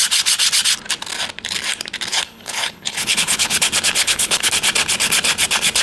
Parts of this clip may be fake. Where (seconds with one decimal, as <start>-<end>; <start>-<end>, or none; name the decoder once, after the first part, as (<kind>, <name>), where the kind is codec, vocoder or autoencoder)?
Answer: 2.1-3.6 (codec, HILCodec); 4.0-4.5

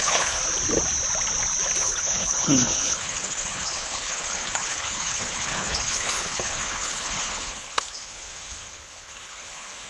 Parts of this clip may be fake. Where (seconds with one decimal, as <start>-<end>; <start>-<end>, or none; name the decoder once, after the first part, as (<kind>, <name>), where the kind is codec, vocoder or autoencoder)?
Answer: 0.0-0.4 (codec, HILCodec); 1.8-9.9